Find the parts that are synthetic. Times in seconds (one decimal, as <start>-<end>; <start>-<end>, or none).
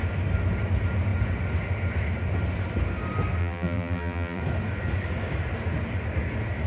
3.4-4.4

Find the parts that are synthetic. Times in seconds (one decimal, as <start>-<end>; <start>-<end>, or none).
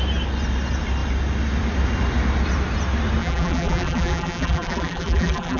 3.2-5.6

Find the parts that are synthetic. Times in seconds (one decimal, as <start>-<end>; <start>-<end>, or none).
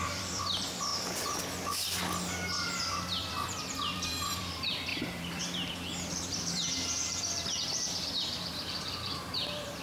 0.0-0.9; 2.8-9.8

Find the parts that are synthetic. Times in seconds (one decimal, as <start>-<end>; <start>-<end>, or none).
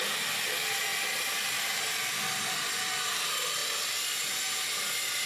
none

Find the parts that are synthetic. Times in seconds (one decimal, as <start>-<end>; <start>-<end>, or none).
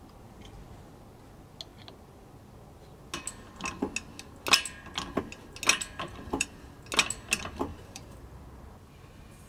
6.1-6.6; 7.7-8.4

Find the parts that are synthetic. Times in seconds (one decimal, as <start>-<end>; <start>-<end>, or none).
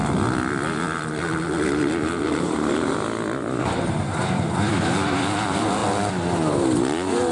3.6-5.8